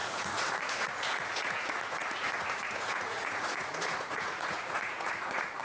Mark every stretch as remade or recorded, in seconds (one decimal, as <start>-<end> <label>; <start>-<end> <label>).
0.0-5.6 remade